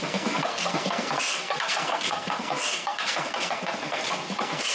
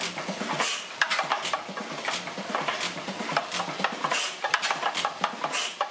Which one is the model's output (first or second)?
first